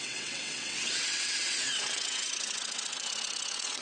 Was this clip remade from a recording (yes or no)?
yes